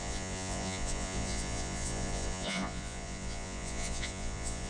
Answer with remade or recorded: remade